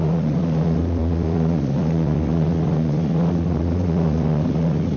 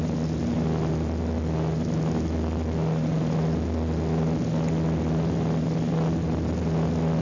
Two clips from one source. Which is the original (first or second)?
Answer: second